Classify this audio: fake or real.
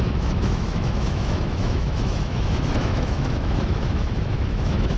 fake